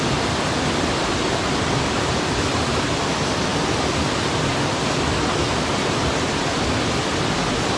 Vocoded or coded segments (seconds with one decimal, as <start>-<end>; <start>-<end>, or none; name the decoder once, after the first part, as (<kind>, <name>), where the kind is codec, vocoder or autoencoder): none